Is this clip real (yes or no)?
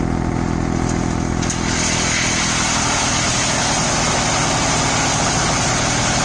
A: yes